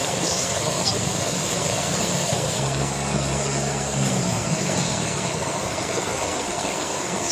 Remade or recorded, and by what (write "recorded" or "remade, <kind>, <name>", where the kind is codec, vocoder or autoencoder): remade, codec, SNAC